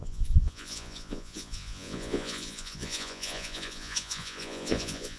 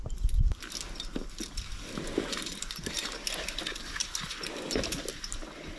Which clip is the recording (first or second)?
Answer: second